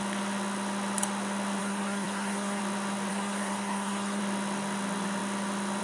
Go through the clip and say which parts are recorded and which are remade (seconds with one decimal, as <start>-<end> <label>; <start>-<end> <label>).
0.0-1.6 recorded; 1.6-2.6 remade; 2.6-3.1 recorded; 3.1-4.2 remade; 4.2-5.8 recorded